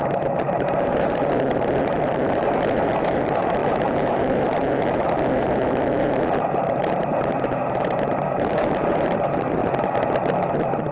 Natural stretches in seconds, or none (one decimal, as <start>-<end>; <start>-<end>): 9.6-10.5